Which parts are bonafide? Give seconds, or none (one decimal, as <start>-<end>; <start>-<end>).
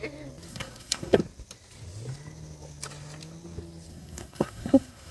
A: 0.0-0.5; 1.2-3.9